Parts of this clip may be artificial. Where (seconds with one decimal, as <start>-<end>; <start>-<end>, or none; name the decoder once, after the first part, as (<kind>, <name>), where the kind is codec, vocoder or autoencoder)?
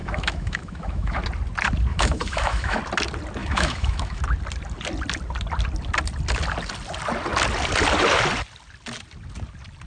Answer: 0.0-1.2 (autoencoder, DAC-VAE); 1.9-2.8; 3.4-4.2